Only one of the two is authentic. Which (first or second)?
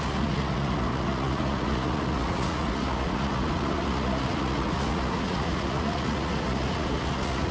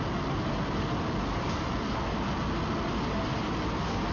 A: second